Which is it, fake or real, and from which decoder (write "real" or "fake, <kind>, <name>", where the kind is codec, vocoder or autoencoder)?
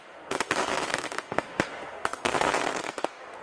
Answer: fake, codec, SNAC